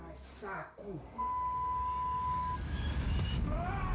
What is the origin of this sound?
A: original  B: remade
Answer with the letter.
B